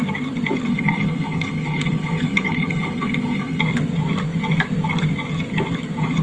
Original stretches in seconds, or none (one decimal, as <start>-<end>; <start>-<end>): 0.0-0.7; 3.6-6.2